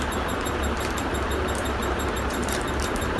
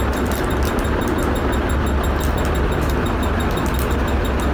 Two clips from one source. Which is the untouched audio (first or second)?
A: second